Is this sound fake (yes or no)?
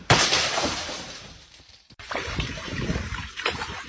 yes